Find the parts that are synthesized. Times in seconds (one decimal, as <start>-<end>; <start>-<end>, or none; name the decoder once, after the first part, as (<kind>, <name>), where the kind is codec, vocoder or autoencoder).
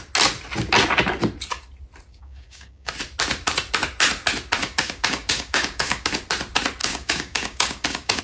2.1-2.9 (codec, DAC); 4.6-6.1; 6.8-8.2